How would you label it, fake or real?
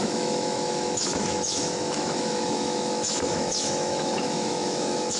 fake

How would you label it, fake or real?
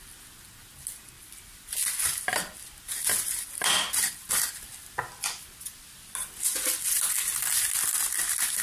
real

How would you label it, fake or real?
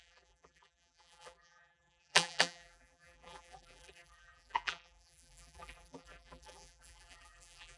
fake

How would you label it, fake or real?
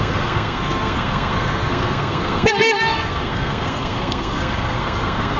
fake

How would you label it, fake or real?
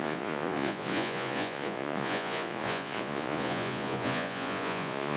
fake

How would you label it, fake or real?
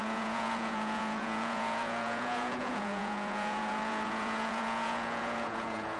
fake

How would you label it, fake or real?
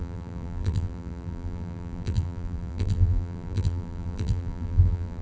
fake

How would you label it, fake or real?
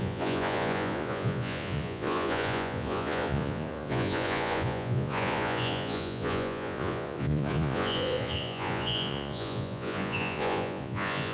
fake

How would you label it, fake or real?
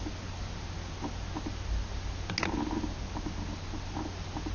real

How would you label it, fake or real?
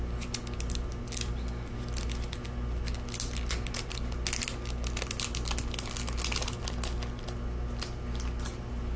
real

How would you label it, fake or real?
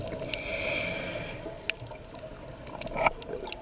real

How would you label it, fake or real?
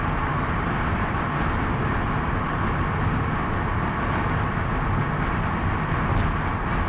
real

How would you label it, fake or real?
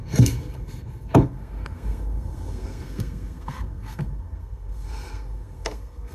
fake